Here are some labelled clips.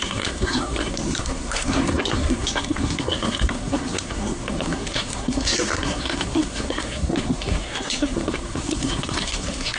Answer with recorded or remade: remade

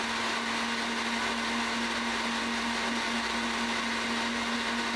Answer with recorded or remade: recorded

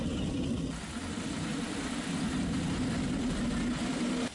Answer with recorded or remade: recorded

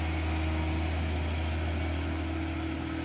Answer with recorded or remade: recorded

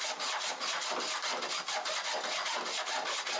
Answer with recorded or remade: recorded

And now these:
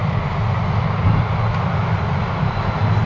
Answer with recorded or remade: recorded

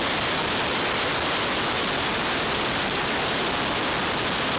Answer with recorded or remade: recorded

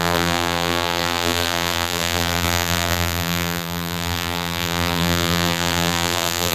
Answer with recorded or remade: remade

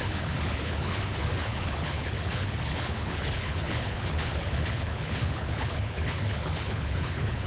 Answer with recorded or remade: remade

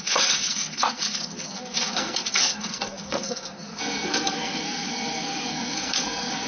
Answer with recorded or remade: remade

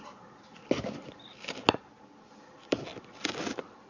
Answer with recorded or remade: recorded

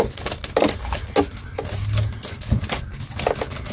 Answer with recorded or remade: recorded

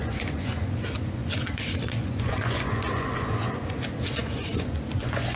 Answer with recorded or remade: remade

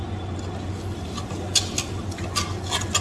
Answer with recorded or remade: recorded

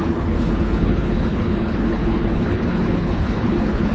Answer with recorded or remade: remade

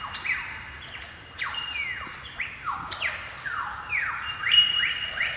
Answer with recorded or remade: recorded